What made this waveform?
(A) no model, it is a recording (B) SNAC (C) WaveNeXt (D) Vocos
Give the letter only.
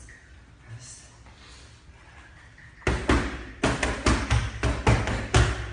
A